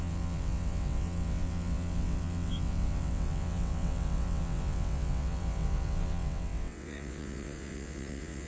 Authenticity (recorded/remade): remade